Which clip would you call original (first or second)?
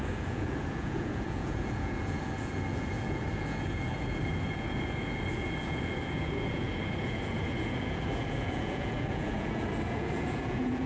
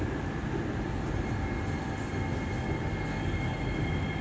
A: second